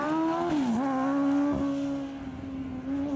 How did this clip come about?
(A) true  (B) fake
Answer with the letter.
A